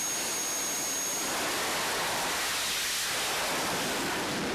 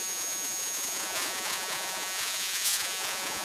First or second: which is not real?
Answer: second